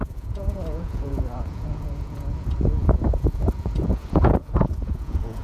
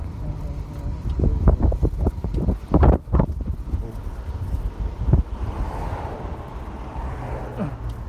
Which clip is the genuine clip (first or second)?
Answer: second